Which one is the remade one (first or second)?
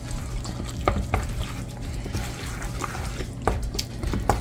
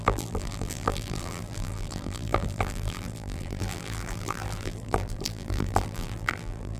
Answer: second